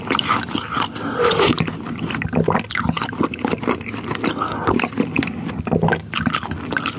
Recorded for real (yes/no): yes